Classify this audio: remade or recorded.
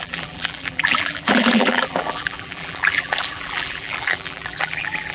remade